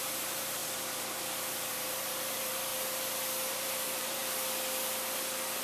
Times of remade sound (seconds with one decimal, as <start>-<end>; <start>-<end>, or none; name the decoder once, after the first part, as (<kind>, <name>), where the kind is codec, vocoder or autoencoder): 0.0-0.6 (vocoder, BigVGAN v2); 1.7-2.7; 3.5-4.2